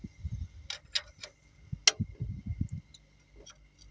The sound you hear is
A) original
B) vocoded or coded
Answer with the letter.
A